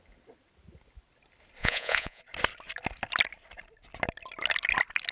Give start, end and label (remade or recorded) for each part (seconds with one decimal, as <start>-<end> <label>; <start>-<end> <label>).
0.0-1.6 recorded; 1.6-2.2 remade; 2.2-5.1 recorded